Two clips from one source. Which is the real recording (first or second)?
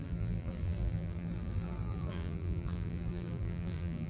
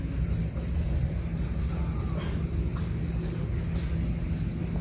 second